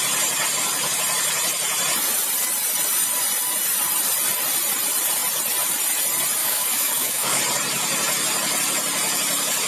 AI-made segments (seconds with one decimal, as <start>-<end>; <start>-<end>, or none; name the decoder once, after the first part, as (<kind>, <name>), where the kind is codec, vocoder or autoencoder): 6.4-7.4 (codec, DAC)

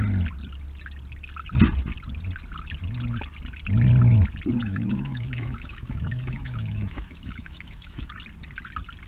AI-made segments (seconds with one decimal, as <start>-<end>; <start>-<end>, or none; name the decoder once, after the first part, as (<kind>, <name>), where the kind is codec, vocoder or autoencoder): 4.6-8.1 (autoencoder, DAC-VAE)

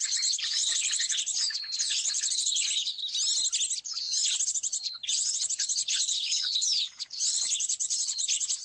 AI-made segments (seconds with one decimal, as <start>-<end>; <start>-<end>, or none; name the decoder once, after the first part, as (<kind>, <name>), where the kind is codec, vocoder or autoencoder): 0.0-3.0 (codec, HILCodec); 3.8-8.6

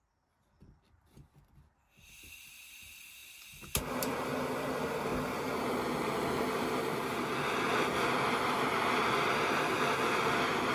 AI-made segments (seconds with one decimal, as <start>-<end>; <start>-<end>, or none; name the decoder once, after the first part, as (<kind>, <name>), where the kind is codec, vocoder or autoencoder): 0.0-3.2 (vocoder, BigVGAN v2); 4.0-5.1; 5.7-10.7

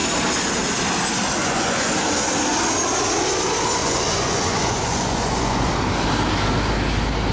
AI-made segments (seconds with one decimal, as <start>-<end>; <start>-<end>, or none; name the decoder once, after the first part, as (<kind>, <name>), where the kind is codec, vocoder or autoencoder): 1.4-1.9 (vocoder, Vocos); 3.8-5.7

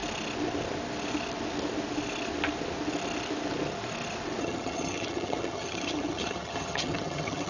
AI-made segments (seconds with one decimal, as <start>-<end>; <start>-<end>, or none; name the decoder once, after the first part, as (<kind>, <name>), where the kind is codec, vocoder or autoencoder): 4.4-7.5 (vocoder, HiFi-GAN)

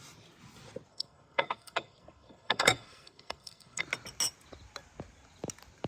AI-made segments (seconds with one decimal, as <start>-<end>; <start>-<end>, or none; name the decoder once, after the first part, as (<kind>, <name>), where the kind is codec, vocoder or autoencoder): 0.9-3.8 (codec, SNAC)